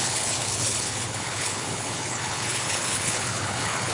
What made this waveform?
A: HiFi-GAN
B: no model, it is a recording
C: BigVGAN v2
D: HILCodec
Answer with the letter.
D